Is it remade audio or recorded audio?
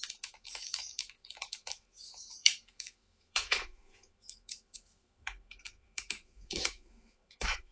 remade